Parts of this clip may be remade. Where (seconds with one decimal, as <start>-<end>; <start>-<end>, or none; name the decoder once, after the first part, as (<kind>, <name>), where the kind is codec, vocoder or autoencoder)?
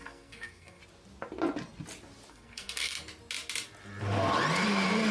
0.0-0.8 (codec, SNAC); 2.3-3.1